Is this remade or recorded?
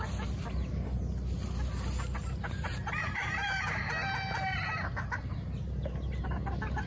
recorded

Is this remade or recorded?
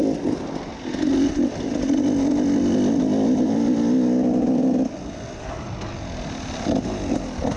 recorded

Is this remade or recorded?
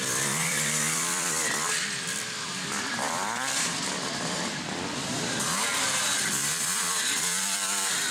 remade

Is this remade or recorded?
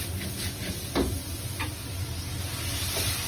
recorded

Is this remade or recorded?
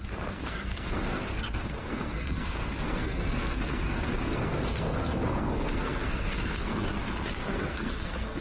remade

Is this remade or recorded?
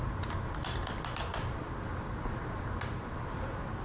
recorded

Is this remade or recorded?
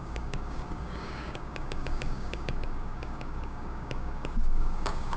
remade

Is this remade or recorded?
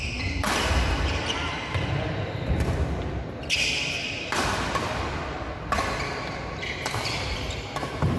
recorded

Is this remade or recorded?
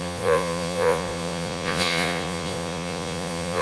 remade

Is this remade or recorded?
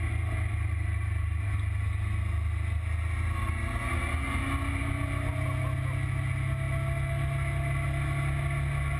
recorded